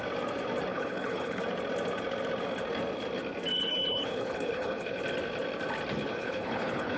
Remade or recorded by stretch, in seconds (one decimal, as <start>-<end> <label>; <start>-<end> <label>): 0.0-0.7 recorded; 0.7-1.4 remade; 1.4-3.5 recorded; 3.5-5.0 remade; 5.0-6.1 recorded; 6.1-7.0 remade